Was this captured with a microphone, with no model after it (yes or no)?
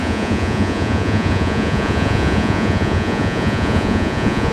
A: no